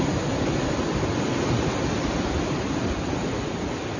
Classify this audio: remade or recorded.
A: recorded